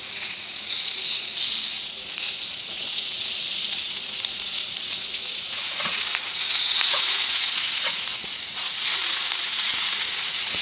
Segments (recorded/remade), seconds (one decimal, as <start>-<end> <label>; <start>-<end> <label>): 0.0-1.3 remade; 1.3-1.8 recorded; 1.8-10.6 remade